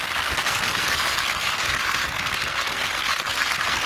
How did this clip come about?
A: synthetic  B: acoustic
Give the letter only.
A